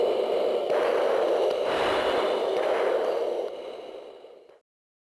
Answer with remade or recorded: recorded